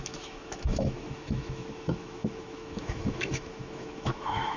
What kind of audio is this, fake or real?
fake